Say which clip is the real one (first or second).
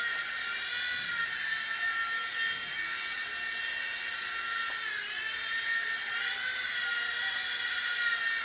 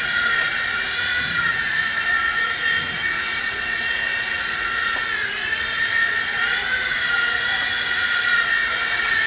first